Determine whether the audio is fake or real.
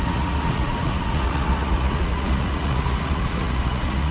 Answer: fake